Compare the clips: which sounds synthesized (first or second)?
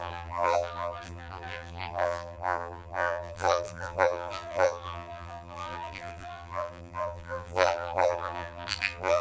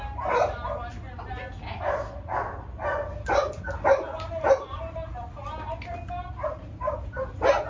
first